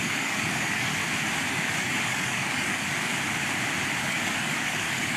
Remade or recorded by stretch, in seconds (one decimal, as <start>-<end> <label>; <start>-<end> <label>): 0.0-1.0 remade; 1.0-1.5 recorded; 1.5-3.1 remade; 3.1-4.0 recorded; 4.0-5.2 remade